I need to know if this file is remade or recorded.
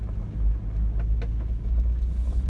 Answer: recorded